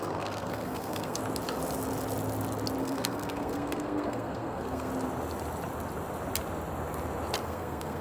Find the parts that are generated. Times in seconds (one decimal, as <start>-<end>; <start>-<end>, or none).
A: 0.0-1.2; 2.8-4.9; 7.4-8.0